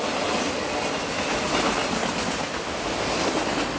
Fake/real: real